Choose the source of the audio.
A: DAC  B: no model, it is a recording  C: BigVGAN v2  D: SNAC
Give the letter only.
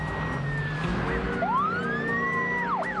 B